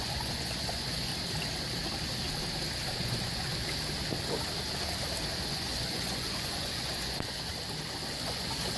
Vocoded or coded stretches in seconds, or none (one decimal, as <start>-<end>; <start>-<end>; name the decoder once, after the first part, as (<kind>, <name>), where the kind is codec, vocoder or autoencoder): 0.0-1.1 (vocoder, Vocos); 2.9-3.5; 5.3-7.5; 8.1-8.8